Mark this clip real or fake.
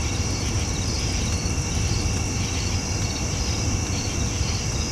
real